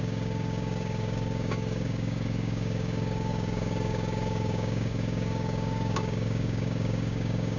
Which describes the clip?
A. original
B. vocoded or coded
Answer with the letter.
B